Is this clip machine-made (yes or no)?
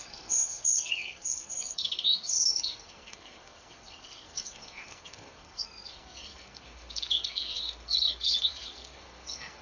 yes